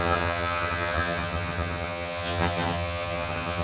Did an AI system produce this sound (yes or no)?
yes